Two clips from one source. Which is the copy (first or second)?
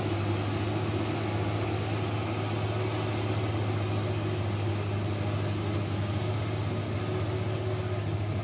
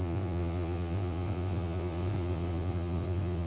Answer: second